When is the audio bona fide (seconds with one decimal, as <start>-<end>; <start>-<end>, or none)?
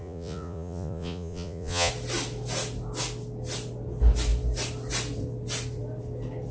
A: 1.9-6.5